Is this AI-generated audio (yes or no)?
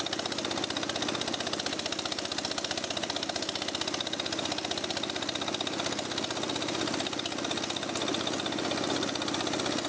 no